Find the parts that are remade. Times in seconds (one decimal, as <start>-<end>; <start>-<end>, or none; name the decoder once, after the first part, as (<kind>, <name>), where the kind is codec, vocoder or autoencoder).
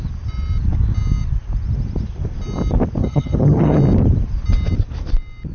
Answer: 3.0-3.8 (vocoder, HiFi-GAN)